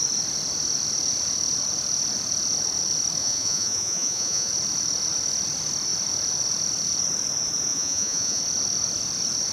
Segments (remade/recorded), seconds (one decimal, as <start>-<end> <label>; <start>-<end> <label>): 0.0-3.2 recorded; 3.2-4.5 remade; 4.5-7.7 recorded; 7.7-8.4 remade; 8.4-9.5 recorded